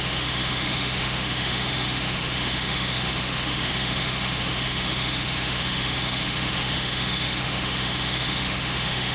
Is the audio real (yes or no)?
no